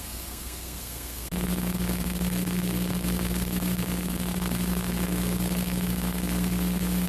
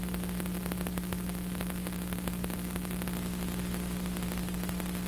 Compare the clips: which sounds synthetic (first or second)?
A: first